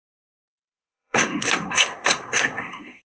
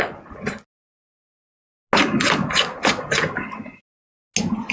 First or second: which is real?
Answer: second